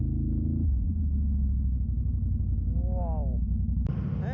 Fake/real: real